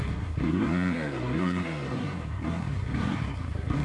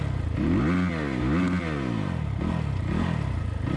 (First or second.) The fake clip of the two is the first